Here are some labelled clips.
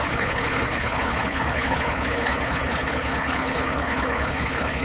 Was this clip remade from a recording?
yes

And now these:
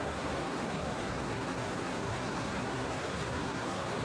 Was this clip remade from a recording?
yes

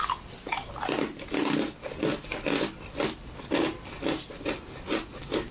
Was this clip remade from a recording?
no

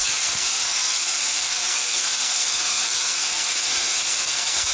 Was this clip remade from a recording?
yes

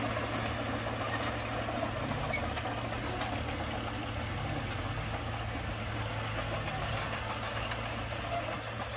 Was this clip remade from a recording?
no